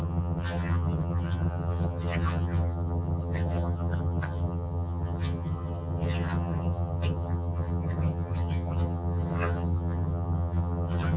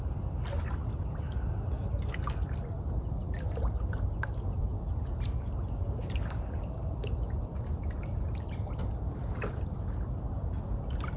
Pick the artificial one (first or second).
first